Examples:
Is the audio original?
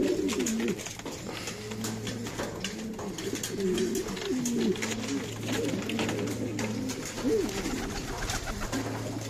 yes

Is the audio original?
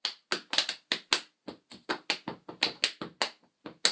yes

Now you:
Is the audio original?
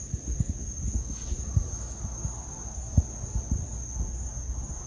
yes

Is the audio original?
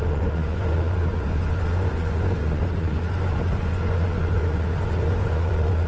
no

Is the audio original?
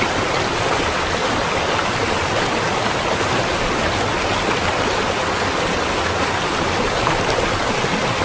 yes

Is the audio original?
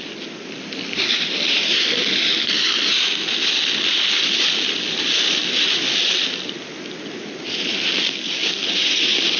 yes